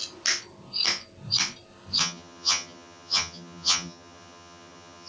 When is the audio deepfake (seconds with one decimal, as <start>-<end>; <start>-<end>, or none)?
2.0-5.1